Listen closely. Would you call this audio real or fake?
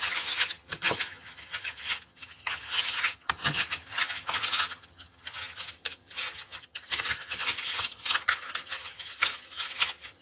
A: fake